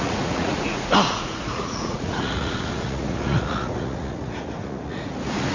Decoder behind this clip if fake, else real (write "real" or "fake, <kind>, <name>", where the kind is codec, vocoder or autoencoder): fake, vocoder, Vocos